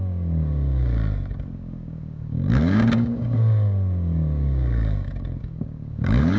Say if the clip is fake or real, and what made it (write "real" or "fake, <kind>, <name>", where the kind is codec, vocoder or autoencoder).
fake, codec, DAC